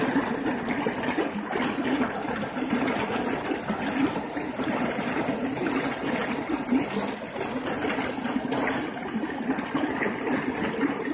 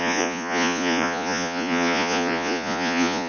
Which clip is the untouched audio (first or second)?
first